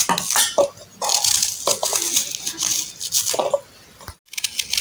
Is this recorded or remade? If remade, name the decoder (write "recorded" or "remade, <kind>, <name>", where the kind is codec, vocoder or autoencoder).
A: recorded